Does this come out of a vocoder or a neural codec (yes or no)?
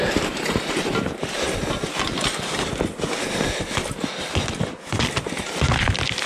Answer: no